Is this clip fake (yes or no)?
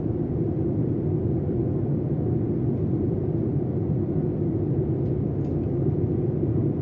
no